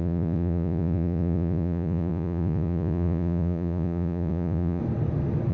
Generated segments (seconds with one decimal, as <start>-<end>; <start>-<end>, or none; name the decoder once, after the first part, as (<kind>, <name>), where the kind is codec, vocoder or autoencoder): 0.0-4.8 (vocoder, Vocos)